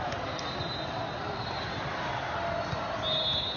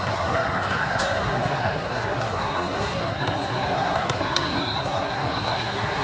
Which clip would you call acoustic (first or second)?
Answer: first